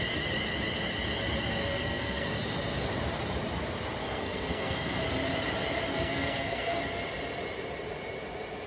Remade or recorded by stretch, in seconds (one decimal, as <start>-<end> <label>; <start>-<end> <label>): 0.0-1.6 recorded; 1.6-2.3 remade; 2.3-4.0 recorded; 4.0-5.0 remade; 5.0-5.9 recorded; 5.9-6.8 remade; 6.8-8.7 recorded